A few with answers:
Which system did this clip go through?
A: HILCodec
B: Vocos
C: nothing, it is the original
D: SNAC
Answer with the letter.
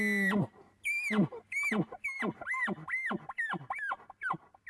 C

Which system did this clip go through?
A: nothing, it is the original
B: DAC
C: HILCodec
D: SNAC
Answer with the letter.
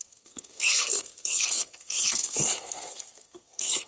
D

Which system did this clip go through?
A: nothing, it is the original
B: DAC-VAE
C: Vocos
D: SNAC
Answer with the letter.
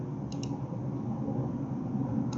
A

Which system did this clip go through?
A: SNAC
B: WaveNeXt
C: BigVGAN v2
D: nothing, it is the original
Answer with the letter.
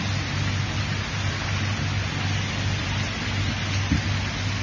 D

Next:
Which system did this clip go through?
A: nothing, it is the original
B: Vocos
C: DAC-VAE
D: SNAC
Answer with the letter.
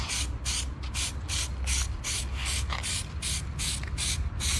A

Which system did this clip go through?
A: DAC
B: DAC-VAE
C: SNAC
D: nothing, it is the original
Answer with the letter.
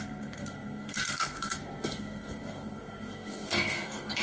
C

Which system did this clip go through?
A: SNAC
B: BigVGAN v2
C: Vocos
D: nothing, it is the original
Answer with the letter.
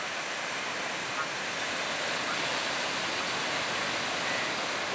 D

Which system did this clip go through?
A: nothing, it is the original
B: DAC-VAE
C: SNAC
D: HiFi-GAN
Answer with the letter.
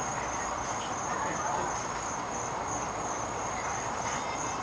A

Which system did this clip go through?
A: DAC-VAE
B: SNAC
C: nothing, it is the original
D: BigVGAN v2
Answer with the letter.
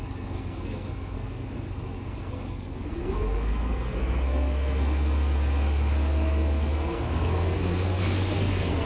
B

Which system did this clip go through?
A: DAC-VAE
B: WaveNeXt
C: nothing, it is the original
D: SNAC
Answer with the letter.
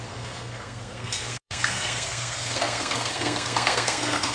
D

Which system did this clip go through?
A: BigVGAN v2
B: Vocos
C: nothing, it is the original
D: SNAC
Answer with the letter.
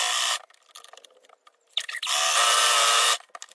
C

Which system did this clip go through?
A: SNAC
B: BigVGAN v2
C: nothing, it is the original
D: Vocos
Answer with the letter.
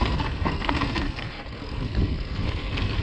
A